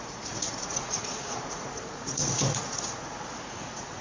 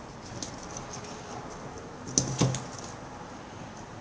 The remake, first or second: first